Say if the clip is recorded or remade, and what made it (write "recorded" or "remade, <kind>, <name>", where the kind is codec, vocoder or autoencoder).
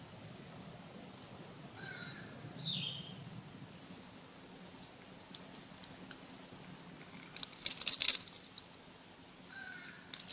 recorded